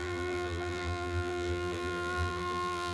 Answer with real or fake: fake